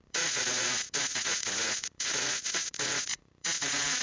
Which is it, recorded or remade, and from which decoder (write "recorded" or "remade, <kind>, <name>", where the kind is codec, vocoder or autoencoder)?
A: remade, vocoder, Vocos